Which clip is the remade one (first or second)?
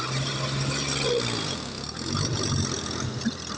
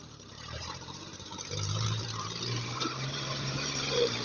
second